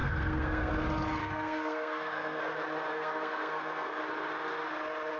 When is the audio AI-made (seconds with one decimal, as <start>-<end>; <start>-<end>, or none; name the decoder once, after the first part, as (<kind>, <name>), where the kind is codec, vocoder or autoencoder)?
0.0-0.7 (codec, SNAC); 1.2-2.4; 2.9-4.0